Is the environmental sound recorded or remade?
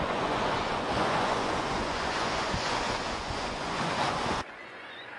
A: remade